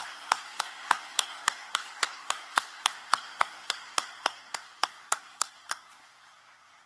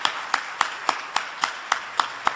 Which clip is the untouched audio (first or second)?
second